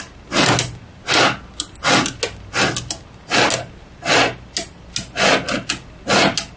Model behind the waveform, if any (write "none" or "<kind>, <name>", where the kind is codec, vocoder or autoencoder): none